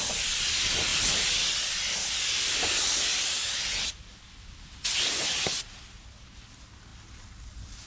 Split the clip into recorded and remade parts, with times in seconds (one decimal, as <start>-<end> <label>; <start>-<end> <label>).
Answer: 0.0-7.9 recorded